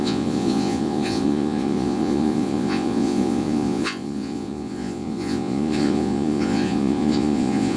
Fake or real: fake